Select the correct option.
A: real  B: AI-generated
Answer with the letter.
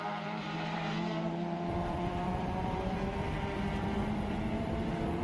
B